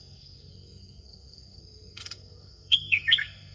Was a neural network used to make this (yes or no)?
yes